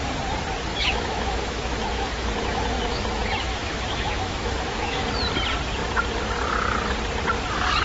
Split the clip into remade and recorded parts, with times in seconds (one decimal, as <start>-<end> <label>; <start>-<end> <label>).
0.0-0.7 recorded; 0.7-5.1 remade; 5.1-7.8 recorded